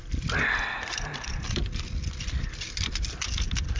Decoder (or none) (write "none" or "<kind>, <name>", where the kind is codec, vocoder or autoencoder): none